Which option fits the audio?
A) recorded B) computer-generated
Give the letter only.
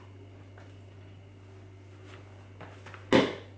A